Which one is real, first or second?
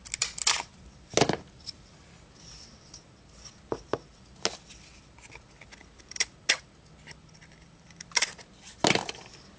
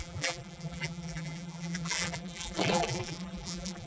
first